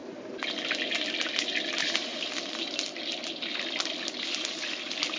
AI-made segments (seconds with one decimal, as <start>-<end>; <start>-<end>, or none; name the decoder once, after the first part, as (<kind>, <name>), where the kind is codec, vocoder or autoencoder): none